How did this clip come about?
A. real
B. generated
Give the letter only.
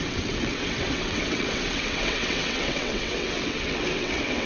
B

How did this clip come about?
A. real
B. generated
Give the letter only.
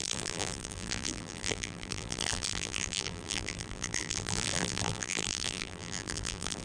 B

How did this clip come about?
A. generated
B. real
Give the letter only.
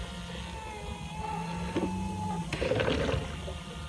B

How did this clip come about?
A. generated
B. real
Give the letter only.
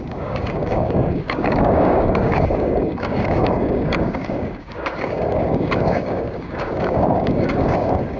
A